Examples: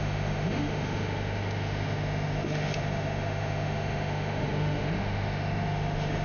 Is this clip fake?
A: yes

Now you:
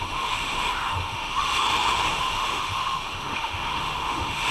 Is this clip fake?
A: yes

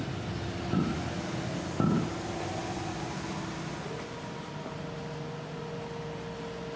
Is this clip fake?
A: no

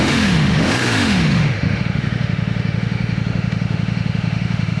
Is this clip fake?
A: yes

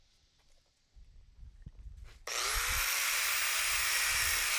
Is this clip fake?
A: no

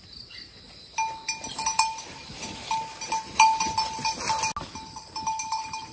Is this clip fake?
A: no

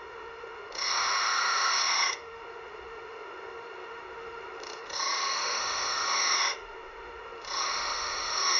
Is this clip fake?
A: yes